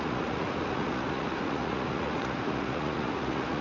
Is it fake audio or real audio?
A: fake